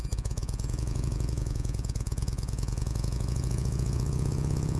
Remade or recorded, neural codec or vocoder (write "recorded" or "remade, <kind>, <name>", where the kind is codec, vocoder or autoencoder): remade, vocoder, Vocos